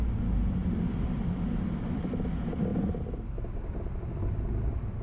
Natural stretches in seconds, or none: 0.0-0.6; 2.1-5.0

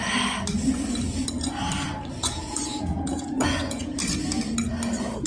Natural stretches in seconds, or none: 0.0-2.2; 4.0-5.3

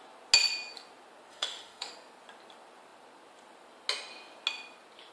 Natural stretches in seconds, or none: 0.0-1.3; 1.9-5.1

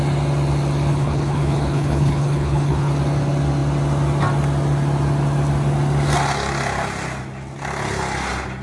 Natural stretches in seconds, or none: 0.0-0.9; 2.9-8.6

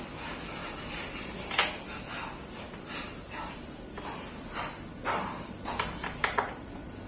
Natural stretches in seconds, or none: 0.0-7.1

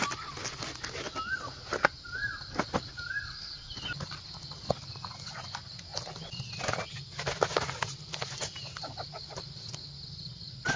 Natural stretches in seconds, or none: 0.0-10.8

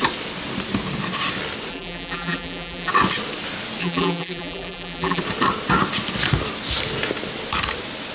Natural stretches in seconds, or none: 0.0-1.7; 2.9-3.8; 5.2-8.1